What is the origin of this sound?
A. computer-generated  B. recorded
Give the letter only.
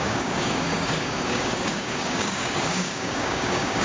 A